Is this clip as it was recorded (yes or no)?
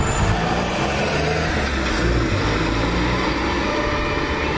yes